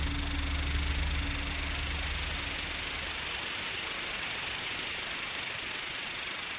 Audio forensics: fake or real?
real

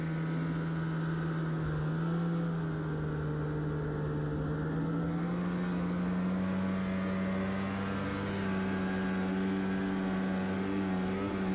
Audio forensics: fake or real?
real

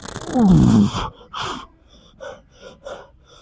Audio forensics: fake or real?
real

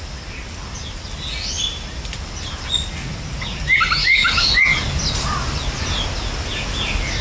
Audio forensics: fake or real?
real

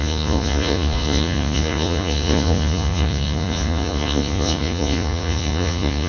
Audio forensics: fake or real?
fake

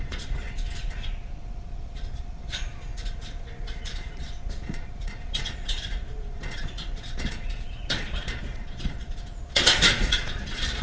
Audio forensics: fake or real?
fake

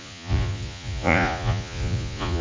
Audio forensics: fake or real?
fake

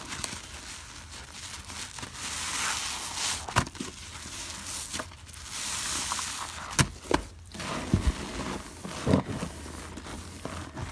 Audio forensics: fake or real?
real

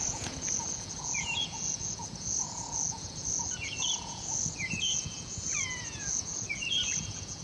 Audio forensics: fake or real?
fake